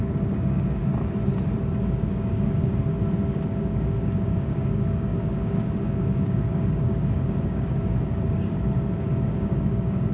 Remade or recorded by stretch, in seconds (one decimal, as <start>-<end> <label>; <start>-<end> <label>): 0.0-0.8 remade; 0.8-1.8 recorded; 1.8-10.1 remade